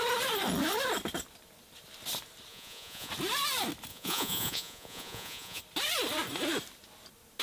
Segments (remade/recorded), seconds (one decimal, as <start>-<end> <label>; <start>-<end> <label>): 0.0-2.5 recorded; 2.5-3.1 remade; 3.1-3.9 recorded; 3.9-5.6 remade; 5.6-7.4 recorded